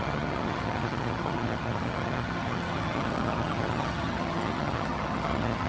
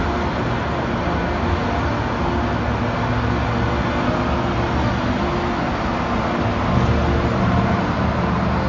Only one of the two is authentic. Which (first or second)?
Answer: second